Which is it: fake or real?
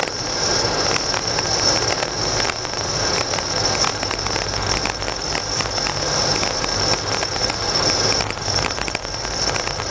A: real